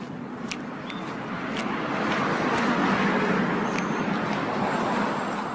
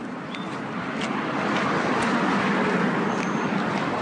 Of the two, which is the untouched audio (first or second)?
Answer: first